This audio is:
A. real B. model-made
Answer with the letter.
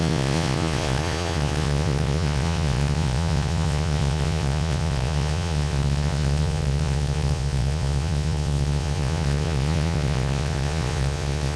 B